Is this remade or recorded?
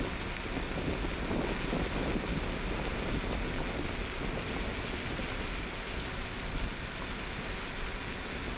recorded